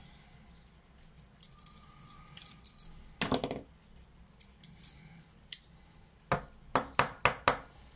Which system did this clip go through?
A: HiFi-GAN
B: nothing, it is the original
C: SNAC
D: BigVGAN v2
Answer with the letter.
B